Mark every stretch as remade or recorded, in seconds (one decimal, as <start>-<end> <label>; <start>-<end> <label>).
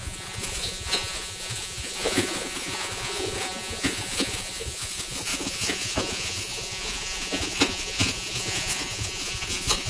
0.0-9.9 remade